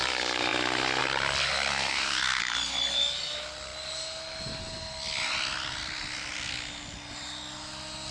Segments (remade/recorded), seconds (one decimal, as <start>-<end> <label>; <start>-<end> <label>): 0.0-1.7 recorded; 1.7-2.4 remade; 2.4-8.1 recorded